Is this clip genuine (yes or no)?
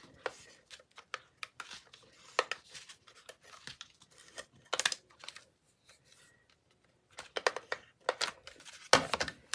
yes